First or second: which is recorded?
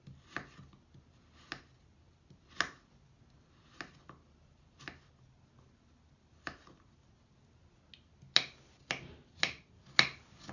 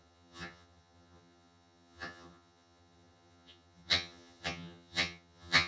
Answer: first